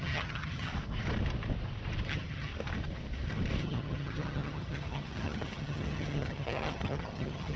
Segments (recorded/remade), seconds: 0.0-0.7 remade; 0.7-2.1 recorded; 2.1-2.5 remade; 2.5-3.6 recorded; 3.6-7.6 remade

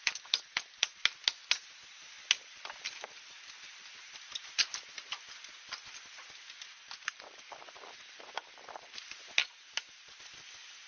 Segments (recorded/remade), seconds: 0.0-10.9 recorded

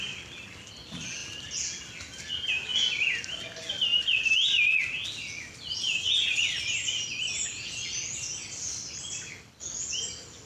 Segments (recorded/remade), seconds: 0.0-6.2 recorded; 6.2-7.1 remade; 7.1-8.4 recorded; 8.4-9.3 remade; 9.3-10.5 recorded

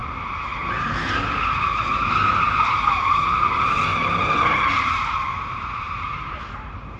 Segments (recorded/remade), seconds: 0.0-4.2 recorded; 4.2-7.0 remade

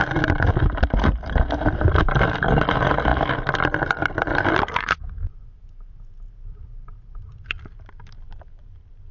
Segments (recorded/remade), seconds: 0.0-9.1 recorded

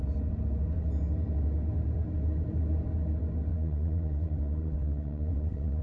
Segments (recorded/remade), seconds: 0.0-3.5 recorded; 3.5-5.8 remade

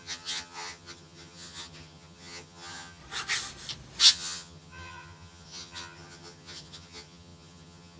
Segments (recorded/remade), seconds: 0.0-3.0 remade; 3.0-4.0 recorded; 4.0-8.0 remade

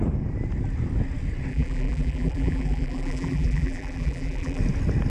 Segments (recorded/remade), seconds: 0.0-1.5 recorded; 1.5-4.6 remade; 4.6-5.1 recorded